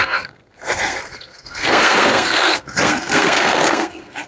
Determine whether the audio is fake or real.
fake